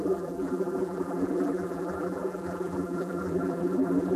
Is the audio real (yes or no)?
no